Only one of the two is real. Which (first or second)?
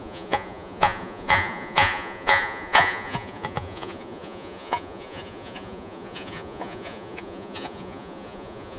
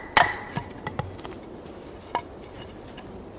second